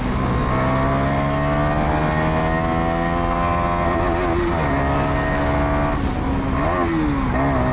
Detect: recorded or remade recorded